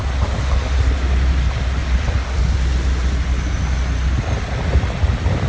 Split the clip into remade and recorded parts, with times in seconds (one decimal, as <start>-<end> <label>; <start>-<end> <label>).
0.0-1.8 recorded; 1.8-2.4 remade; 2.4-5.5 recorded